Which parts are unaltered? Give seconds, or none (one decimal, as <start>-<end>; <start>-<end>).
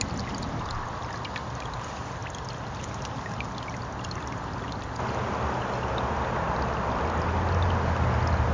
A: 0.0-8.5